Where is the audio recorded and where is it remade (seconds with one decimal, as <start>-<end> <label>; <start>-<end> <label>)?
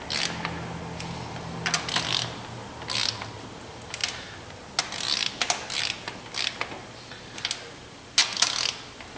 0.0-9.2 recorded